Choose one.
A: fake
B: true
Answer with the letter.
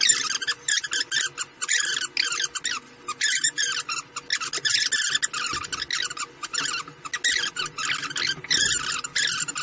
B